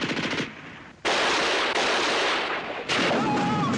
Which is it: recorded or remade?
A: recorded